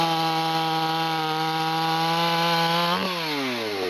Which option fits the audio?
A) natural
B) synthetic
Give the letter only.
A